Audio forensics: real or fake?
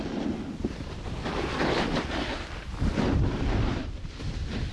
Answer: real